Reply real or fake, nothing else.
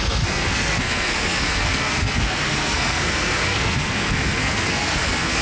fake